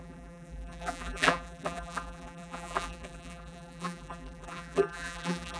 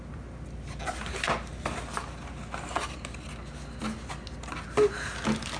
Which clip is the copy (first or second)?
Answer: first